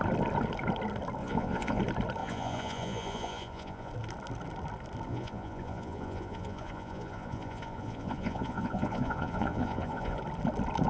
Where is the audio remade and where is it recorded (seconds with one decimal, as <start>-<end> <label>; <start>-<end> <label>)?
0.0-1.2 recorded; 1.2-1.8 remade; 1.8-2.2 recorded; 2.2-3.9 remade; 3.9-5.1 recorded; 5.1-10.2 remade; 10.2-10.9 recorded